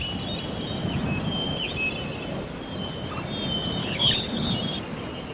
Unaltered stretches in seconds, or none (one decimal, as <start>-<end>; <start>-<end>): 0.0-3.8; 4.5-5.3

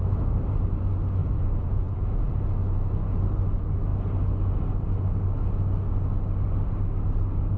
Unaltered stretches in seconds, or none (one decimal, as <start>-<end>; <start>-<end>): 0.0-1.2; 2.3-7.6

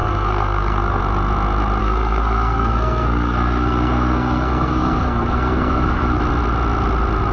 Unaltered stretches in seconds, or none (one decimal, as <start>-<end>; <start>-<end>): 1.0-1.8; 6.2-7.3

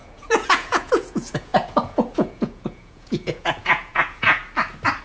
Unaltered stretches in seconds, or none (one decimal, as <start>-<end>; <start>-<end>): 4.4-5.0

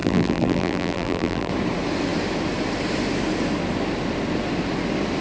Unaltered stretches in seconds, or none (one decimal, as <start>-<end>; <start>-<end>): 1.5-5.2

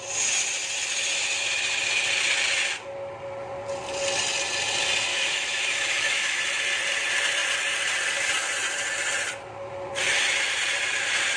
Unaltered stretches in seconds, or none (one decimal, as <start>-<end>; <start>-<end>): 0.0-5.1; 6.4-11.4

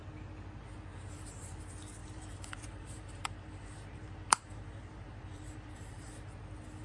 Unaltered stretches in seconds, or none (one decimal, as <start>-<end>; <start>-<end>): 0.0-0.9; 1.6-2.0; 6.1-6.8